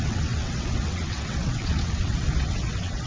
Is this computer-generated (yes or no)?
yes